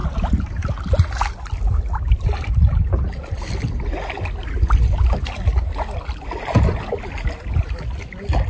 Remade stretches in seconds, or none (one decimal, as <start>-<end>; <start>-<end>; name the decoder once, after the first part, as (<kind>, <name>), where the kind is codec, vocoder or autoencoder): none